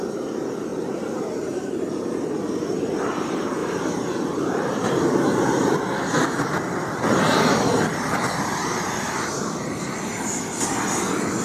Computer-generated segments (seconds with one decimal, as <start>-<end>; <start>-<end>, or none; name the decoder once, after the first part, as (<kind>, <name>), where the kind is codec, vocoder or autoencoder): 0.7-2.1 (vocoder, BigVGAN v2); 3.6-5.7